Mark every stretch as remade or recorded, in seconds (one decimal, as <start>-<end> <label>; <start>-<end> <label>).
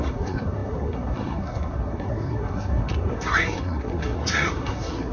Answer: 0.0-5.1 remade